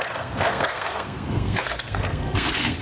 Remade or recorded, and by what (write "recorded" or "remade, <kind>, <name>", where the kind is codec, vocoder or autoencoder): remade, codec, SNAC